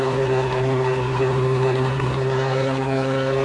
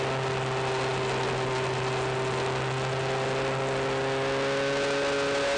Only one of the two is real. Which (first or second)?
second